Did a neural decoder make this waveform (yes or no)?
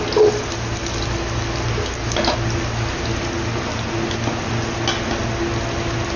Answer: no